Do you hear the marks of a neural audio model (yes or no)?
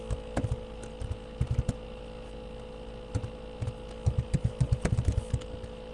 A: no